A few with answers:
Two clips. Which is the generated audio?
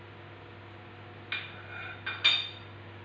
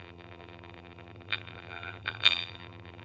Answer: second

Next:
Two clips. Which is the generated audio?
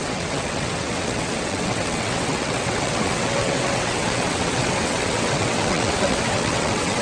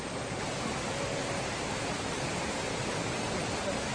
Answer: first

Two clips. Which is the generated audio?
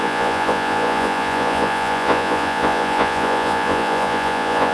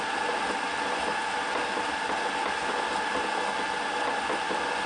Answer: first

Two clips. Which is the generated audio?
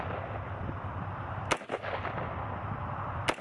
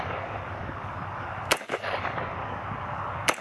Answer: second